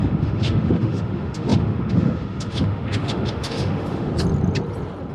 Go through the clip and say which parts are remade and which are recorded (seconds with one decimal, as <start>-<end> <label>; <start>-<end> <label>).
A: 0.0-4.1 remade; 4.1-5.1 recorded